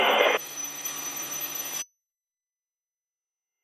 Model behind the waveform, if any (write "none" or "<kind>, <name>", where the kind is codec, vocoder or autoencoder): codec, SNAC